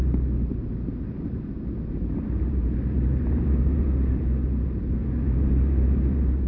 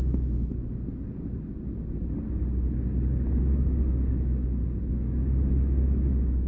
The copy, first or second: first